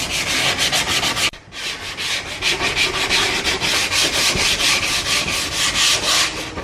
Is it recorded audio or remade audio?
recorded